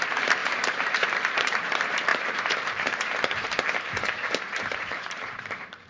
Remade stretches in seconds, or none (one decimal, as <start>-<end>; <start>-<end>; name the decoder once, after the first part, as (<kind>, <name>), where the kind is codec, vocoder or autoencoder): 0.4-1.7 (vocoder, BigVGAN v2); 2.1-5.9